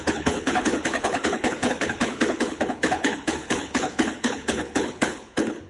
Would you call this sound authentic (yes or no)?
no